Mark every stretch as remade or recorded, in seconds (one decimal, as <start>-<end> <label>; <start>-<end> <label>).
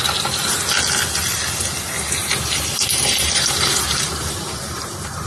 0.0-2.2 recorded; 2.2-5.3 remade